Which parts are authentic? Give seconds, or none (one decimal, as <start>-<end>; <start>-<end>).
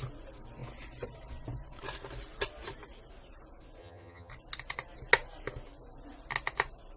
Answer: 0.0-3.8; 4.3-7.0